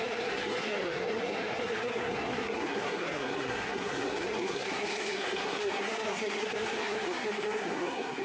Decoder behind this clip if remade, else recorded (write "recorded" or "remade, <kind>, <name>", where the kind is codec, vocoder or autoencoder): remade, codec, SNAC